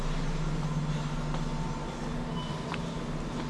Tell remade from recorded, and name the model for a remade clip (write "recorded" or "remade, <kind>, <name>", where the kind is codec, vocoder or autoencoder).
recorded